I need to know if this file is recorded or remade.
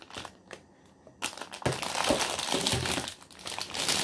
recorded